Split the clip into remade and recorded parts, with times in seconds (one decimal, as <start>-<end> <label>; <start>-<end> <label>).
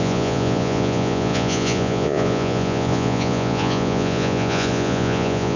0.0-5.6 remade